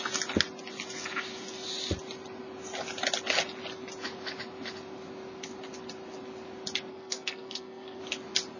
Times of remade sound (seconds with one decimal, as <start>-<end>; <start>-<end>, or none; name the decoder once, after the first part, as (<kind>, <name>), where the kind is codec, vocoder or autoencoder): 6.9-8.0 (codec, SNAC)